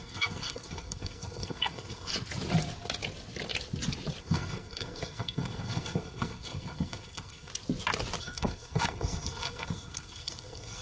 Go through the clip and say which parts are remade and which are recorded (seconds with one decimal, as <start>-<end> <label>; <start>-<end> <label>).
0.0-2.1 remade; 2.1-4.2 recorded; 4.2-7.5 remade; 7.5-8.2 recorded; 8.2-10.8 remade